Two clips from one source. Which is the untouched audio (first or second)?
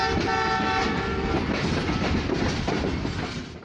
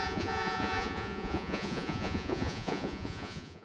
first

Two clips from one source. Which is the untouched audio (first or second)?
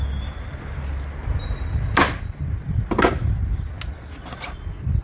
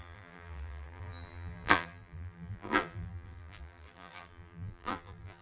first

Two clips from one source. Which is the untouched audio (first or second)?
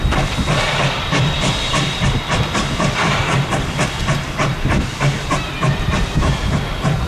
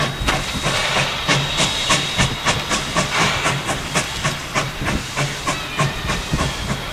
second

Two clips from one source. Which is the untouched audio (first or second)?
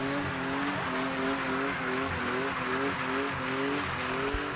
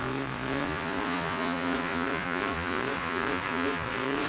first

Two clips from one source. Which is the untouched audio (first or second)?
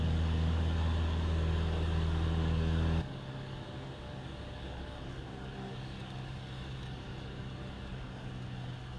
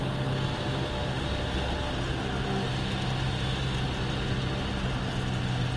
second